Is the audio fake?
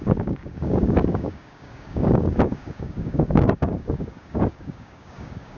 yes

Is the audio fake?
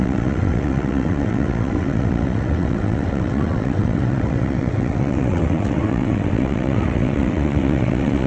yes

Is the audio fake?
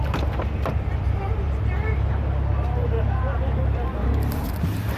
no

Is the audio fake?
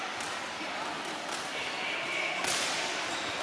yes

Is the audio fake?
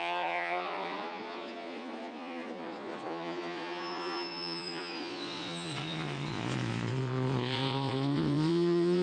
yes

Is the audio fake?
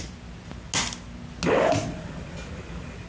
no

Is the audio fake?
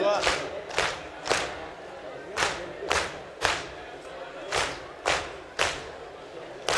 yes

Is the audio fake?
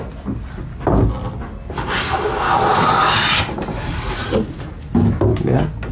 no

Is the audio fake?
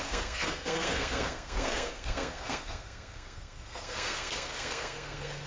yes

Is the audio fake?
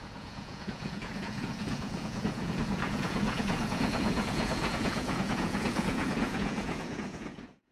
yes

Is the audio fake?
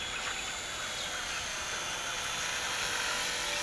no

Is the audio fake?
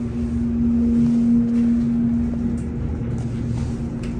no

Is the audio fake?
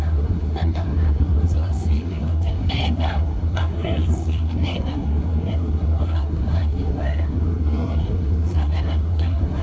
yes